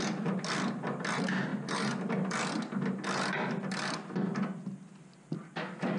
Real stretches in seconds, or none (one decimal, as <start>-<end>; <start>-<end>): 0.0-6.0